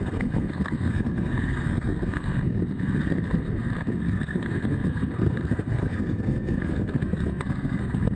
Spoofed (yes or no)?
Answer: yes